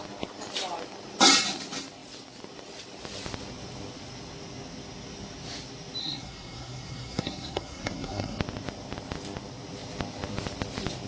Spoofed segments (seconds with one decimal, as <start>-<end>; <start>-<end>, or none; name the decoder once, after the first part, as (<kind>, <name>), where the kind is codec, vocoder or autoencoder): 6.0-8.4 (codec, SNAC)